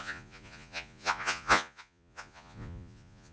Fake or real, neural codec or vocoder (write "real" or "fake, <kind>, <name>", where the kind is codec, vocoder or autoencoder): fake, vocoder, Vocos